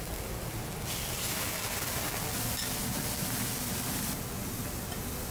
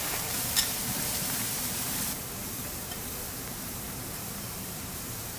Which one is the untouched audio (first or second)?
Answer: first